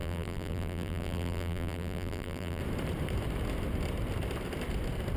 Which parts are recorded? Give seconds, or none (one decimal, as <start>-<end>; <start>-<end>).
2.6-5.2